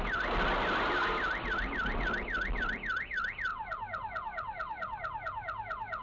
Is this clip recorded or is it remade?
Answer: recorded